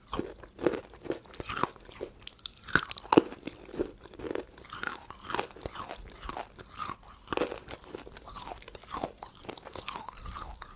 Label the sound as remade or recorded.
recorded